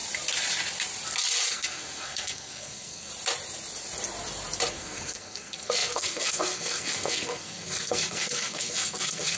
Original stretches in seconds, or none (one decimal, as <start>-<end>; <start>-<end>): 0.0-1.5; 3.1-4.7

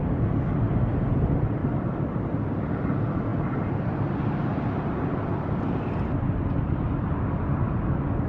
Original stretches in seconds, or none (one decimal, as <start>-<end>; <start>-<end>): 0.0-8.3